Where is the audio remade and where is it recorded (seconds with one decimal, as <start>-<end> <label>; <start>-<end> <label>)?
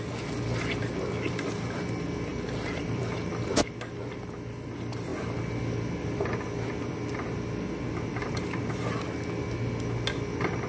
0.0-2.3 recorded; 2.3-3.3 remade; 3.3-8.2 recorded; 8.2-8.7 remade; 8.7-10.7 recorded